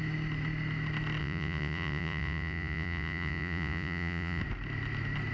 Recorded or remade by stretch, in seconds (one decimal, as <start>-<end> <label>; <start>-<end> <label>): 0.0-1.2 recorded; 1.2-4.4 remade; 4.4-5.3 recorded